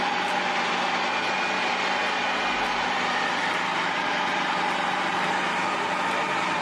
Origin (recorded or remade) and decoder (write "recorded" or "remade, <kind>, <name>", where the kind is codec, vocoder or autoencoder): recorded